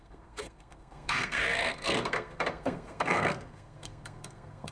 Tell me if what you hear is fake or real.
fake